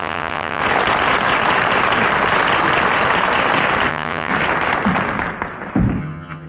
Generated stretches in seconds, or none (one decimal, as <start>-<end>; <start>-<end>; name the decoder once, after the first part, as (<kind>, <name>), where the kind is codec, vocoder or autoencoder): 0.0-0.6 (vocoder, HiFi-GAN); 3.9-4.3; 6.0-6.5

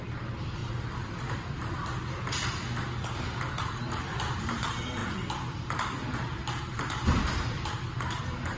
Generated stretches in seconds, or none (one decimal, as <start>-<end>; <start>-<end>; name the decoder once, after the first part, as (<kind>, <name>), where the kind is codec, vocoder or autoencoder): 0.0-0.6 (vocoder, BigVGAN v2); 1.3-1.8; 3.6-8.6